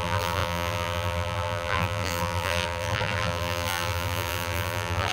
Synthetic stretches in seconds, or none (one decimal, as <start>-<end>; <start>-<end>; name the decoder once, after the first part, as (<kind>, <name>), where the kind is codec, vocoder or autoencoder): 0.0-5.1 (vocoder, BigVGAN v2)